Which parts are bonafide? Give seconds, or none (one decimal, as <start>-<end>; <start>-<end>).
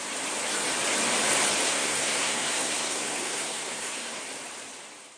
0.0-1.7; 4.2-5.2